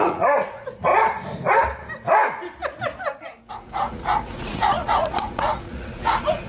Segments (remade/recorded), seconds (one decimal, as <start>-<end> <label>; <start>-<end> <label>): 0.0-0.9 remade; 0.9-3.5 recorded; 3.5-6.5 remade